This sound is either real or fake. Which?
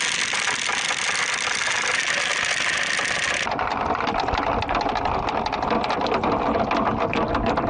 real